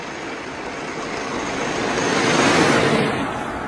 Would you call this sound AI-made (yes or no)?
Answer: no